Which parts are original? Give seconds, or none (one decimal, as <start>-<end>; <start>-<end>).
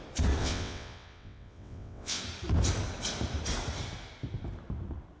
0.0-0.4; 2.2-5.2